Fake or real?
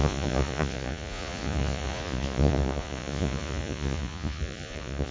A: fake